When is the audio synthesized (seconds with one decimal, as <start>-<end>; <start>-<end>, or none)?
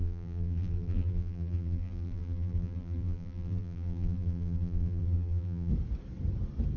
0.0-5.7